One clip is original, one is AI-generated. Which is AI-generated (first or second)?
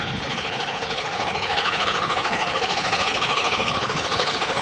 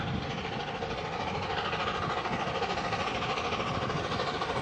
first